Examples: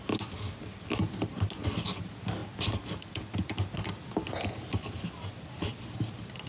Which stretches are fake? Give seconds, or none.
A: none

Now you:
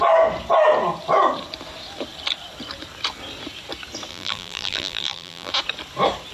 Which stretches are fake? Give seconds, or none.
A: 4.1-5.5 (vocoder, BigVGAN v2)